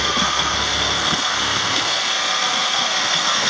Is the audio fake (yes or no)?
yes